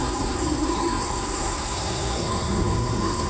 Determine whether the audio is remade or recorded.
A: remade